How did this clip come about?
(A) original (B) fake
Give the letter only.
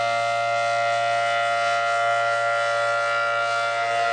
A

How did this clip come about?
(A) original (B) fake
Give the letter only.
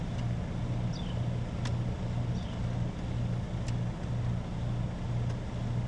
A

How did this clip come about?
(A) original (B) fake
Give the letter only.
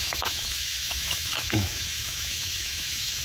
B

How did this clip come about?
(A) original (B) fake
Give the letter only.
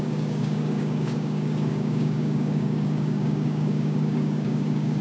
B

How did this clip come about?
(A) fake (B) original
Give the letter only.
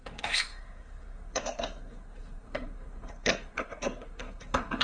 A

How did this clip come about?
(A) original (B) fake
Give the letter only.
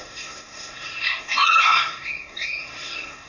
B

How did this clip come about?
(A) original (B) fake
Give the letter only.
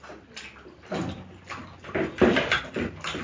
A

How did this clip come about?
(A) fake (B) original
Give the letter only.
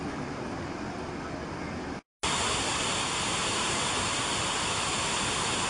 B